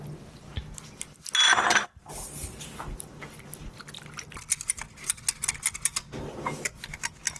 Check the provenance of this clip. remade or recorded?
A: recorded